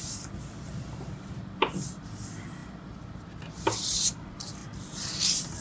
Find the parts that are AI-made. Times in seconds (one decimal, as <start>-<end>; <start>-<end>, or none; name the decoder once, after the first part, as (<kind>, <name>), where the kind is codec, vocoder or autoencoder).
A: none